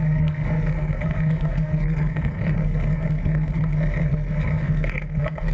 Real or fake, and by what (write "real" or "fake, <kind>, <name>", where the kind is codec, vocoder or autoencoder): fake, codec, SNAC